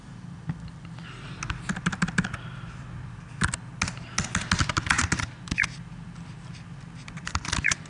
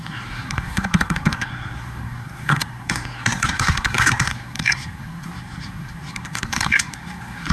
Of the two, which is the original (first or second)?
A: first